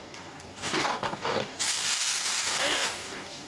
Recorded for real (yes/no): no